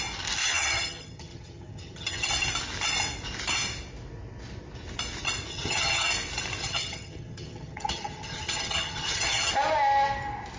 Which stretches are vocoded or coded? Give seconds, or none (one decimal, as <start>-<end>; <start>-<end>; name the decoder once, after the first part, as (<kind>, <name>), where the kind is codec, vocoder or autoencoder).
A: 0.4-2.3 (vocoder, HiFi-GAN); 5.5-6.1; 6.6-9.5